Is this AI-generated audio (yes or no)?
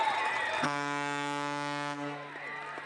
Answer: no